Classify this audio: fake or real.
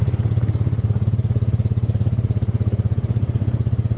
fake